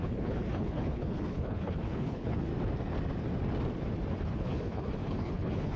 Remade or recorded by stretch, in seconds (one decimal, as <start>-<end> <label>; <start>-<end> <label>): 0.0-2.5 remade; 2.5-4.2 recorded; 4.2-5.8 remade